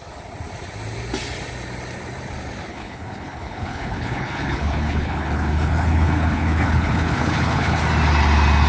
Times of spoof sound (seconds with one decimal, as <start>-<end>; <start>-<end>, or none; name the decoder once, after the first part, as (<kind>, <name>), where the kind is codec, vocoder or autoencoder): 2.7-7.8 (codec, HILCodec)